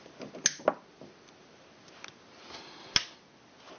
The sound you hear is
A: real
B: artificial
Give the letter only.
A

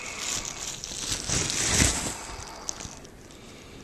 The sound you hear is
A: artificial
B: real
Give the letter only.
B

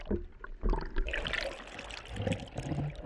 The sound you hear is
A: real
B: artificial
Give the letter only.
A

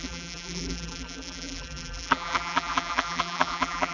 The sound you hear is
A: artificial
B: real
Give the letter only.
A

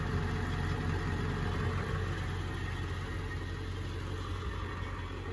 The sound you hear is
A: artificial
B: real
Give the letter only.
B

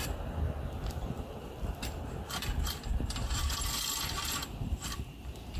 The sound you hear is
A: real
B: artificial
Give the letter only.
B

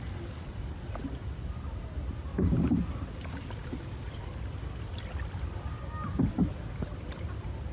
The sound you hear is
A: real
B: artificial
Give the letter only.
A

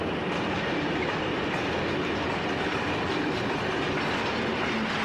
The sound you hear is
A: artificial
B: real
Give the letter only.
B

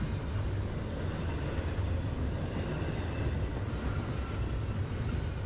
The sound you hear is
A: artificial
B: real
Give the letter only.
B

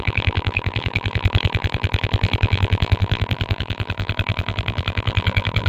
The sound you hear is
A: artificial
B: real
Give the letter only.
A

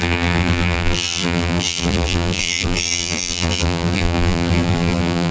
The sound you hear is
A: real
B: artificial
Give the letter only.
B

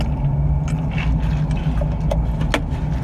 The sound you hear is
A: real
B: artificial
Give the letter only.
A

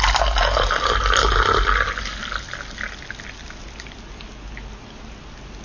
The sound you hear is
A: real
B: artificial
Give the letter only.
A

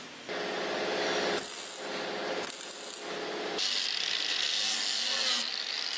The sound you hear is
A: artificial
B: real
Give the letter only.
B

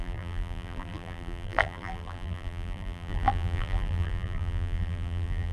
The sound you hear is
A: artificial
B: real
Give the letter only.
A